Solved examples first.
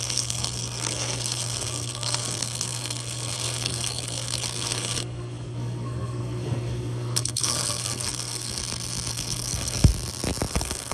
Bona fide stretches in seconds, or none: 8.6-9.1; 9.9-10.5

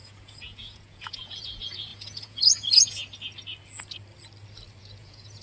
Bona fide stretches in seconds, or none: 3.0-4.8

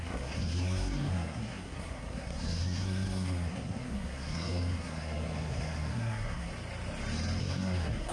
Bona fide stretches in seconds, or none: 6.5-7.4

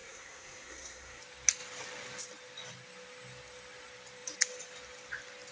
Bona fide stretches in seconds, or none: 1.2-5.5

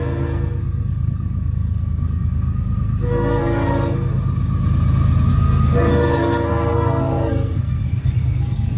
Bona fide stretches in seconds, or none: 4.1-5.3

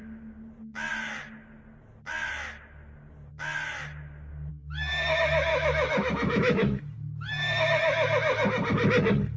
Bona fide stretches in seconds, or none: 0.0-5.5; 6.8-9.4